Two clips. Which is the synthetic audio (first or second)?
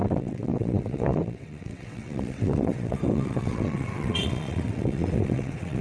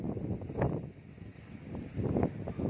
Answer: first